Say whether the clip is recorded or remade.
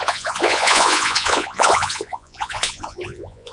remade